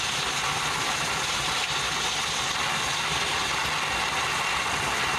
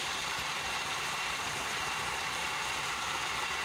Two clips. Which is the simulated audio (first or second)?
second